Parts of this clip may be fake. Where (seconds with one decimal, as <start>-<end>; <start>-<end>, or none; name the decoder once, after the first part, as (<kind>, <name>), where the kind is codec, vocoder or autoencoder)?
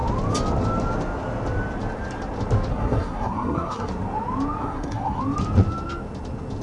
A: 2.7-3.9 (codec, SNAC); 4.6-5.2